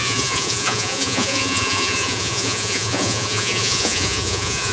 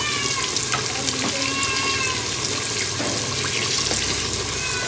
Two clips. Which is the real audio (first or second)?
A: second